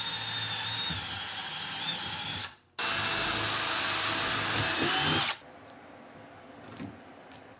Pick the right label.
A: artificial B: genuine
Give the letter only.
B